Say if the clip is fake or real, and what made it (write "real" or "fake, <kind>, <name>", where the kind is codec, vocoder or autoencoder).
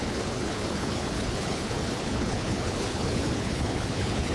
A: fake, codec, HILCodec